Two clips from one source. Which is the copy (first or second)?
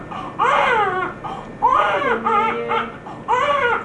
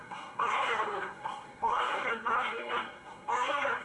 second